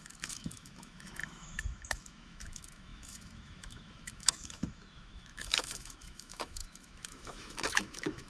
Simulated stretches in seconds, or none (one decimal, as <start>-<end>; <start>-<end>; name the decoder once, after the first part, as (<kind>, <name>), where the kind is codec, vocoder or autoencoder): 0.0-8.3 (autoencoder, DAC-VAE)